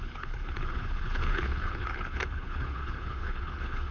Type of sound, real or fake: fake